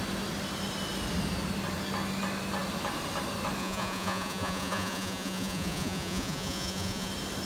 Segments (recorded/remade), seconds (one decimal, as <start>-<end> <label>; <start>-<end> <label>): 0.0-3.6 recorded; 3.6-7.1 remade; 7.1-7.5 recorded